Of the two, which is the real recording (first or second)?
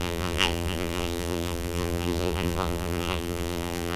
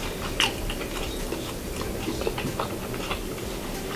second